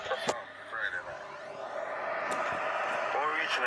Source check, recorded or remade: recorded